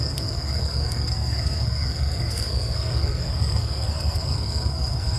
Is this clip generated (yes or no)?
yes